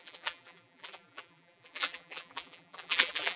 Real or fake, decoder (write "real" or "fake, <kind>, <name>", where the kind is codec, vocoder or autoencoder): fake, vocoder, BigVGAN v2